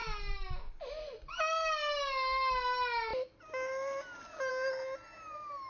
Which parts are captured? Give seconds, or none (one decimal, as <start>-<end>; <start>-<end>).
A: 0.0-5.7